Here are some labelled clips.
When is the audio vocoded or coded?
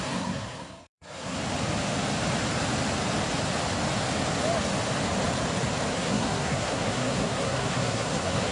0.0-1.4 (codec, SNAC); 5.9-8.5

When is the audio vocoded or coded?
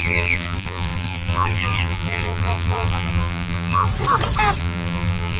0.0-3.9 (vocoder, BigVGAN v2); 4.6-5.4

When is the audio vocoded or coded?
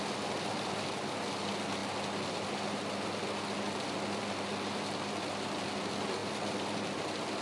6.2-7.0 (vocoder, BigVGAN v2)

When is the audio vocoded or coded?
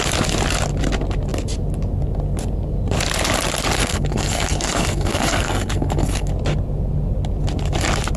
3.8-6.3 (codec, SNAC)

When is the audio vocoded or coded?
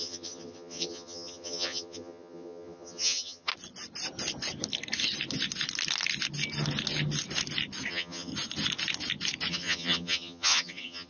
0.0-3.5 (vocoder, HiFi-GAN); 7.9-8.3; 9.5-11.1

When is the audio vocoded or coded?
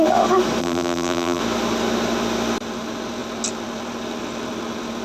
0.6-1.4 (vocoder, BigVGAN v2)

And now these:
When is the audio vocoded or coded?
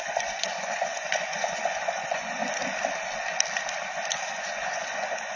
0.0-2.4 (vocoder, Vocos); 4.3-5.4